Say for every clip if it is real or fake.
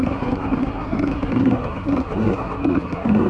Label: fake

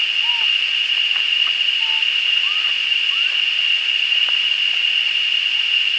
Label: real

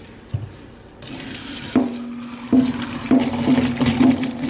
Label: real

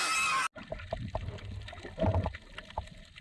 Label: real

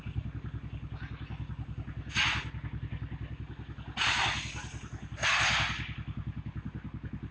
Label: real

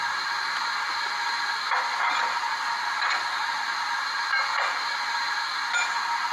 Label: real